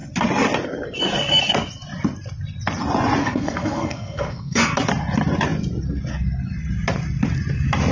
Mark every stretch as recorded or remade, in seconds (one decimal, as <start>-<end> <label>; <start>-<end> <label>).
0.0-3.2 recorded; 3.2-4.7 remade; 4.7-7.9 recorded